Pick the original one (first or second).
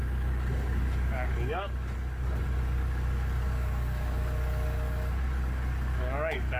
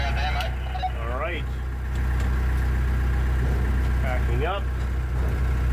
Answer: second